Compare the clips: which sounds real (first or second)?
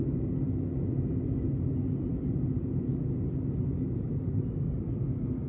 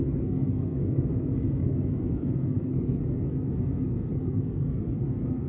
first